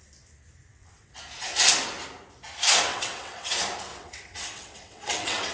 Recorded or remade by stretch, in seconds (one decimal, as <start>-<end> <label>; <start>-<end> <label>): 0.0-0.7 recorded; 0.7-1.2 remade; 1.2-2.9 recorded; 2.9-3.5 remade; 3.5-3.9 recorded; 3.9-5.5 remade